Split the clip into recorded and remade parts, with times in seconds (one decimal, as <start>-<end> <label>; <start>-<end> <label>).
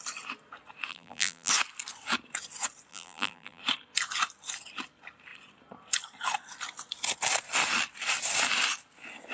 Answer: 0.0-0.9 recorded; 0.9-1.5 remade; 1.5-2.9 recorded; 2.9-3.6 remade; 3.6-9.3 recorded